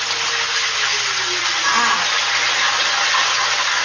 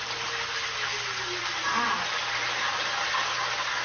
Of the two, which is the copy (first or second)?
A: second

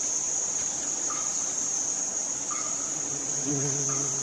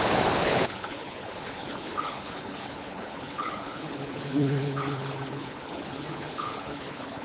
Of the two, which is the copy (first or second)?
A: second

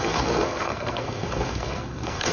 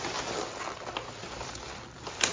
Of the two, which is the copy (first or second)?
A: first